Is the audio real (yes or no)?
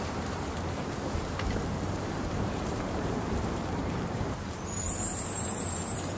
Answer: no